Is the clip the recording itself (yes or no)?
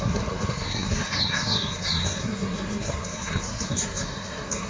no